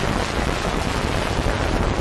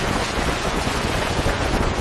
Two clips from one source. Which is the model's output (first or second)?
second